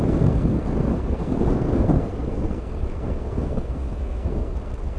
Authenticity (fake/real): fake